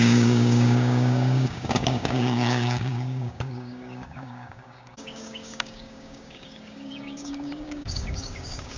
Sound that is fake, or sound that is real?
fake